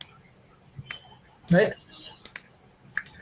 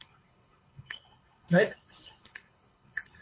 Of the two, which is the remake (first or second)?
second